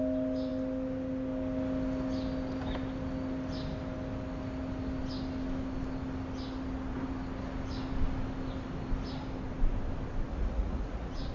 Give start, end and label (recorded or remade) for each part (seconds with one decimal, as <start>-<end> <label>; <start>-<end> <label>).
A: 0.0-10.3 recorded; 10.3-11.3 remade